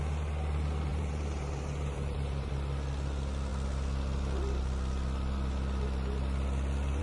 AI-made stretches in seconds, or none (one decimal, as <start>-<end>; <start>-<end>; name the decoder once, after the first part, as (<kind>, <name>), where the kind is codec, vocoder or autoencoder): 0.9-2.5 (vocoder, BigVGAN v2)